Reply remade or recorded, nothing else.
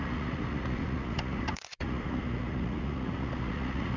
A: remade